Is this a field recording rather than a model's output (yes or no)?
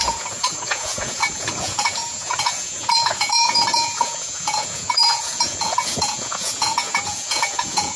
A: no